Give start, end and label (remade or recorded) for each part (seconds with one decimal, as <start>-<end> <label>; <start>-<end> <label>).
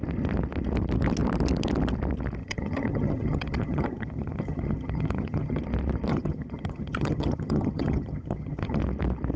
0.0-2.4 recorded; 2.4-5.6 remade; 5.6-6.1 recorded; 6.1-8.8 remade; 8.8-9.4 recorded